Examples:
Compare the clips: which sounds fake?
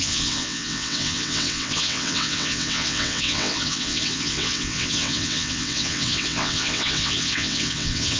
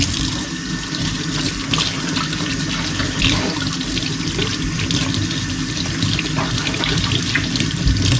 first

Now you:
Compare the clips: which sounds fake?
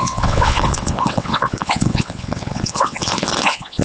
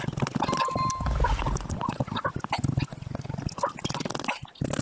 first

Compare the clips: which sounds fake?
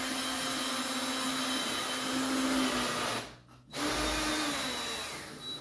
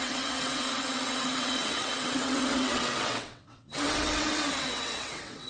second